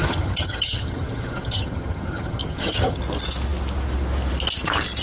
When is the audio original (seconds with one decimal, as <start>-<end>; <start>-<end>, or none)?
3.0-5.0